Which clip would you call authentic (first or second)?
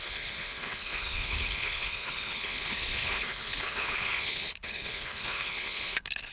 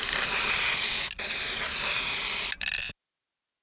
second